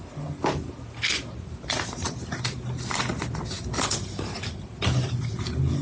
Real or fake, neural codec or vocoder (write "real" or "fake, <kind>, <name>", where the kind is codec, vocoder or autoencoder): real